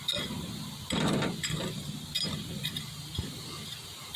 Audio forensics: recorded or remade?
remade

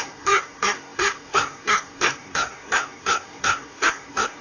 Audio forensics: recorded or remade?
remade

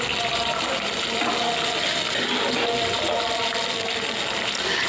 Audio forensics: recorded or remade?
recorded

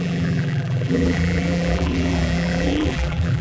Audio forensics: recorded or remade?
remade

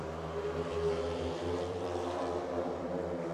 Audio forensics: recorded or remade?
remade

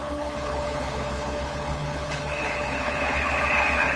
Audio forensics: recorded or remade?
remade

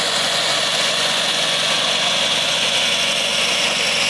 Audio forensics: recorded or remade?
remade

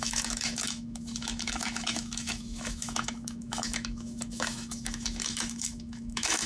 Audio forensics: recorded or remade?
remade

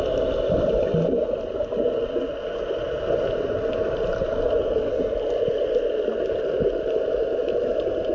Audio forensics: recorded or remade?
recorded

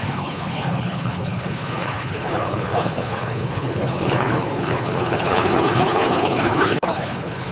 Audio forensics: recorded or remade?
remade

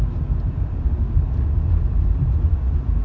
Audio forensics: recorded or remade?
recorded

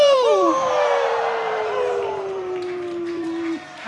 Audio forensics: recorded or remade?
remade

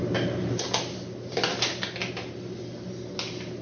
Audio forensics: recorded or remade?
recorded